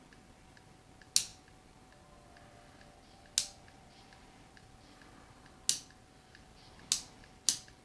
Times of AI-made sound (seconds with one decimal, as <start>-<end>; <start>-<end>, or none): none